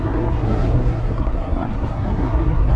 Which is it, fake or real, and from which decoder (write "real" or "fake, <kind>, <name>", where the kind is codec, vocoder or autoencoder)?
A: fake, codec, SNAC